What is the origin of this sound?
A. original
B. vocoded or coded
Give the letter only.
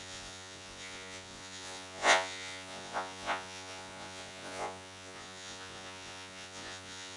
B